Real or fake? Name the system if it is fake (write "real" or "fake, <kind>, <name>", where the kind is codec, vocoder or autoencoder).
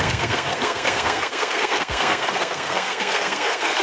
fake, codec, SNAC